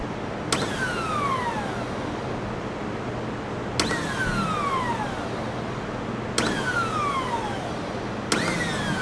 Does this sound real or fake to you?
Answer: real